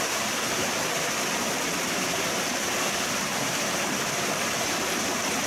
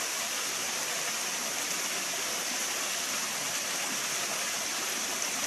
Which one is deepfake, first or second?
first